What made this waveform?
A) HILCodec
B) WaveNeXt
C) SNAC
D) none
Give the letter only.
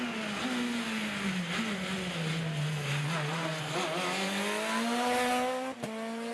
D